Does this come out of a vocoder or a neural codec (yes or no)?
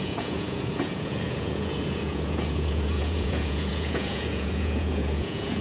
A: yes